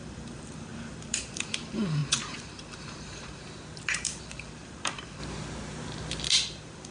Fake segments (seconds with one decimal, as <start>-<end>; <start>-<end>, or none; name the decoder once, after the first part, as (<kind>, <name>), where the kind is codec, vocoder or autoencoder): 0.0-3.4 (vocoder, BigVGAN v2); 3.9-5.2; 6.3-6.9